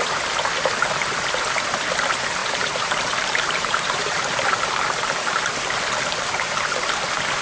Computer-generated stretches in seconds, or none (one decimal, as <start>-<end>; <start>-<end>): 2.4-4.4